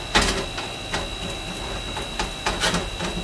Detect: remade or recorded recorded